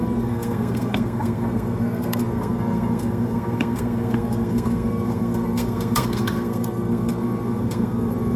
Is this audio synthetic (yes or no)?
yes